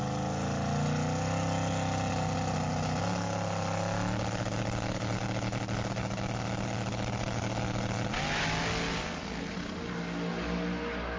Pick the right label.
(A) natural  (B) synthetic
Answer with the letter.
A